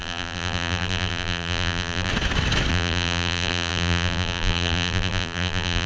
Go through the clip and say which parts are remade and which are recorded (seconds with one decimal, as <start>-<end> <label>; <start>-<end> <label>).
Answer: 0.0-2.1 remade; 2.1-2.7 recorded; 2.7-5.9 remade